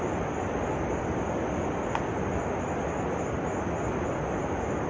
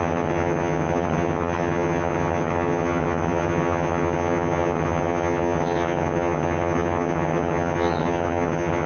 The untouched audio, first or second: first